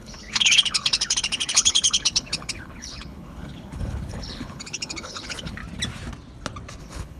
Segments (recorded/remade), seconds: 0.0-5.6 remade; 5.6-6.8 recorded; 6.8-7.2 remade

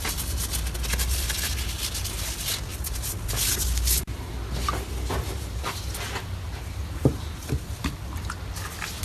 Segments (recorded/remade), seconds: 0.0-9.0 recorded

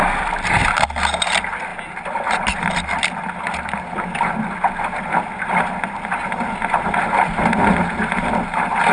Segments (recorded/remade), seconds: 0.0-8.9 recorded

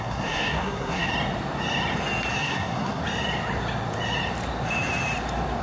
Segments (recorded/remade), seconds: 0.0-1.1 remade; 1.1-2.4 recorded; 2.4-3.0 remade; 3.0-5.6 recorded